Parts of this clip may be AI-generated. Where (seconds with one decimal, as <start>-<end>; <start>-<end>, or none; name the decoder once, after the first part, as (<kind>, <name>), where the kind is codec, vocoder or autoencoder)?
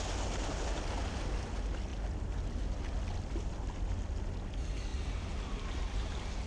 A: none